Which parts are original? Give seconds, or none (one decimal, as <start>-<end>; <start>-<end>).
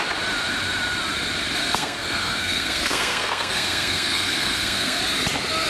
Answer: 0.0-1.6; 5.0-5.7